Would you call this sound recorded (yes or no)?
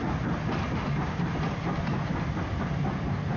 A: yes